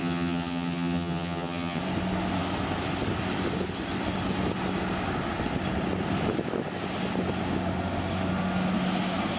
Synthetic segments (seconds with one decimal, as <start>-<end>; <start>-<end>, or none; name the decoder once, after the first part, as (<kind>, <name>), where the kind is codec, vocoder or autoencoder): 0.0-1.8 (vocoder, HiFi-GAN)